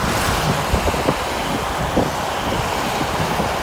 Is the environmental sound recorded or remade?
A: recorded